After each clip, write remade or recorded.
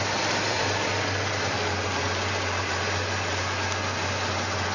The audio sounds recorded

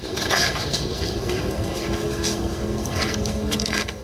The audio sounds remade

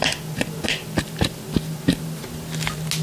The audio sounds recorded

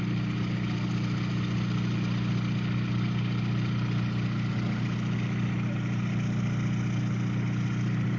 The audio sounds recorded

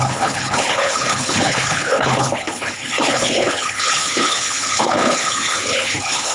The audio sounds remade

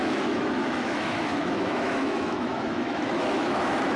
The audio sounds remade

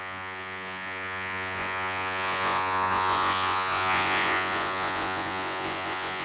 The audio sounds remade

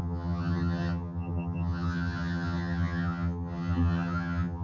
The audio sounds remade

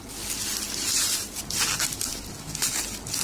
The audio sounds recorded